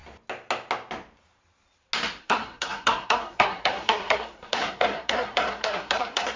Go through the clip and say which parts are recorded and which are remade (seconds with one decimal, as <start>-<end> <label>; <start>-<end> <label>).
0.0-2.2 recorded; 2.2-6.4 remade